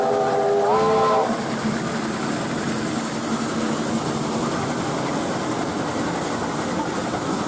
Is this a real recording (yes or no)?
yes